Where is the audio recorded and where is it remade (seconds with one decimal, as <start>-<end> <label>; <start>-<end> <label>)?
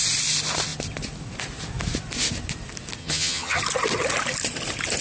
0.0-3.0 recorded; 3.0-3.6 remade; 3.6-5.0 recorded